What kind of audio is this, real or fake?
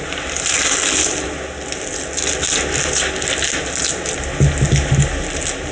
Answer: real